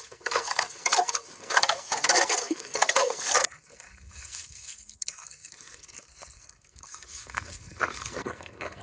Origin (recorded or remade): remade